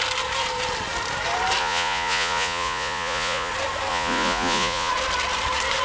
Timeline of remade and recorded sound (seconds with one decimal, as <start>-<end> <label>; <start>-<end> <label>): 0.0-1.6 recorded; 1.6-3.5 remade; 3.5-3.9 recorded; 3.9-4.9 remade; 4.9-5.8 recorded